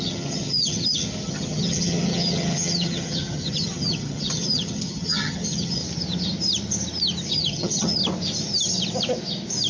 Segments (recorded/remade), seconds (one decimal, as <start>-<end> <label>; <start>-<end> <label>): 0.0-5.8 remade; 5.8-7.3 recorded; 7.3-8.0 remade; 8.0-9.7 recorded